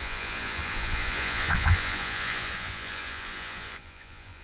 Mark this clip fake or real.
fake